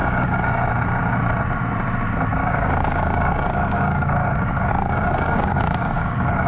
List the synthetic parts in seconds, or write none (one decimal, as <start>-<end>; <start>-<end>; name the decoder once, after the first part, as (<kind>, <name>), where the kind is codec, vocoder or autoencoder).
0.0-0.7 (codec, DAC); 2.4-6.5